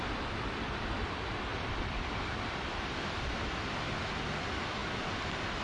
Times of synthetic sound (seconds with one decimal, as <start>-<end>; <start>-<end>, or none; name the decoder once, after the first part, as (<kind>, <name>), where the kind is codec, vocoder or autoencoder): 1.5-3.6 (vocoder, BigVGAN v2)